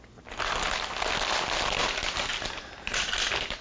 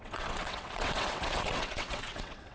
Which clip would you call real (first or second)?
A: first